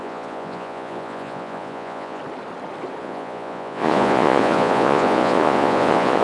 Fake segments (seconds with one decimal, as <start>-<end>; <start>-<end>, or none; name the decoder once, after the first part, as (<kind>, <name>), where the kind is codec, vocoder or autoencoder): 0.0-2.2 (vocoder, Vocos); 3.0-6.2